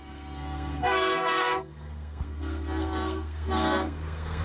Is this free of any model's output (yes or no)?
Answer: no